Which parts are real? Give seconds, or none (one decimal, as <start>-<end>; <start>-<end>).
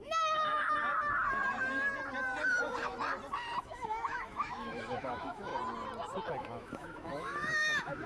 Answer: 0.5-3.6; 5.5-6.4